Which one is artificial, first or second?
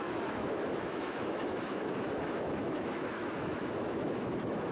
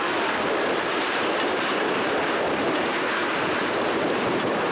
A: first